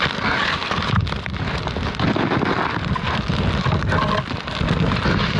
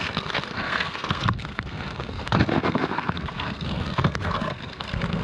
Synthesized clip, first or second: second